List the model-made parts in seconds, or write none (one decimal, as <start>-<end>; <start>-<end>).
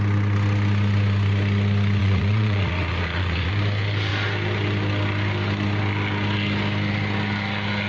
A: 2.0-3.5